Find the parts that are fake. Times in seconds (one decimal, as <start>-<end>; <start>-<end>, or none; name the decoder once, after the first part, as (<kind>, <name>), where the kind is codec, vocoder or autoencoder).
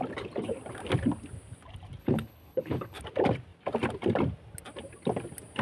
2.0-3.0 (codec, HILCodec)